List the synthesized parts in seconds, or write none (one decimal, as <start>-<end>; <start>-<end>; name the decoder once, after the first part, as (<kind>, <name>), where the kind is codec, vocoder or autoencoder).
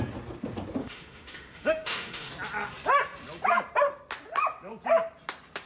0.8-2.3 (autoencoder, DAC-VAE)